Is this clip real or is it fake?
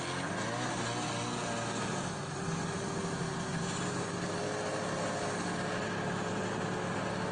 real